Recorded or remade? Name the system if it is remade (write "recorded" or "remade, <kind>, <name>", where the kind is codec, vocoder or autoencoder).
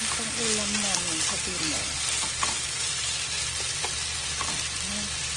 recorded